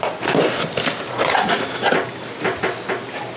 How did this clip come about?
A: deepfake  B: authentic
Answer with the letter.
B